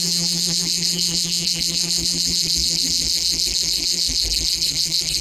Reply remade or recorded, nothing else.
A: remade